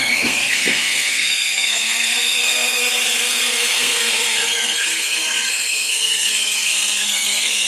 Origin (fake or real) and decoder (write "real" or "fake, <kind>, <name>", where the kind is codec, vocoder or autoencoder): fake, codec, SNAC